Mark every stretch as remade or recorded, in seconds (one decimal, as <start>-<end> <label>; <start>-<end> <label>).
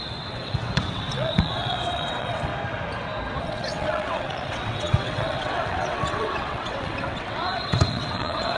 0.0-2.5 remade; 2.5-3.4 recorded; 3.4-8.6 remade